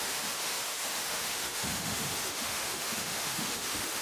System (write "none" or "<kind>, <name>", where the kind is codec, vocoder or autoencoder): autoencoder, DAC-VAE